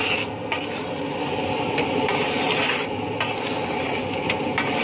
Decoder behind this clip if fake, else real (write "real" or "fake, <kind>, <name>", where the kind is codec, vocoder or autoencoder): real